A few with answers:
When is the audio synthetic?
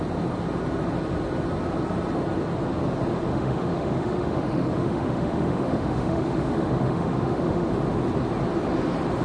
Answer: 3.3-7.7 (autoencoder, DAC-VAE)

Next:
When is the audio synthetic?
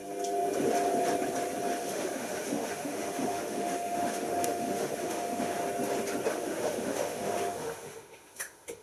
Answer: 1.8-5.6 (autoencoder, DAC-VAE); 6.3-8.8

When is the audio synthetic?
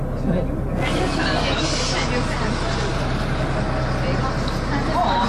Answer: none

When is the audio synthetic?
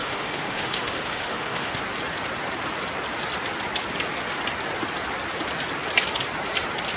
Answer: 0.0-1.8 (autoencoder, DAC-VAE)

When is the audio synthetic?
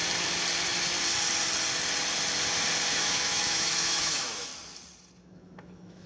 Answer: 2.9-4.5 (autoencoder, DAC-VAE); 5.2-6.1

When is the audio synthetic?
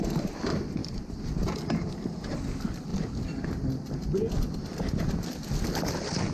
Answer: none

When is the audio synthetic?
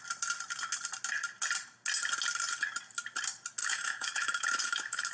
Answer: 3.6-5.1 (autoencoder, DAC-VAE)